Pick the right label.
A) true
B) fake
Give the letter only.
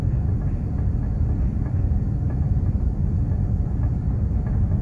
A